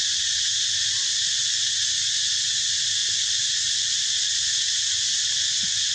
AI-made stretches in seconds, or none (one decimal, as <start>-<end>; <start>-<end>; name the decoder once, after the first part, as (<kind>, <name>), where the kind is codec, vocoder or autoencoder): none